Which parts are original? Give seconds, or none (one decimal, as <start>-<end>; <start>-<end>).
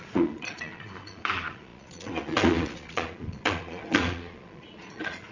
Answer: none